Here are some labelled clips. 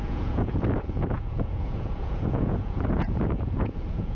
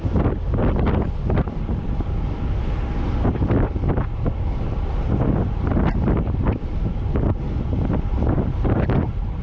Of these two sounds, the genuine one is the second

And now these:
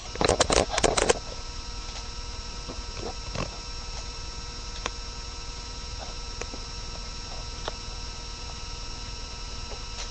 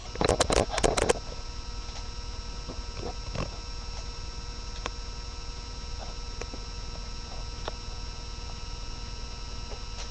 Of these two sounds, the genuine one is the second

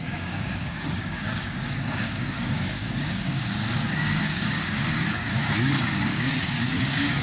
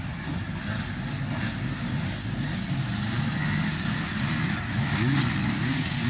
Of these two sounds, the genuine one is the second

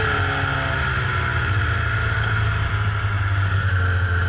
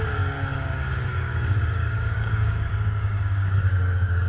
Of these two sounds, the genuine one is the first